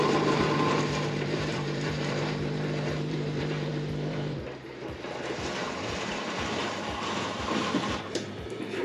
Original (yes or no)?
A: no